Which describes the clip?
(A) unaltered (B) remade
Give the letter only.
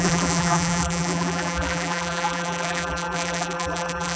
B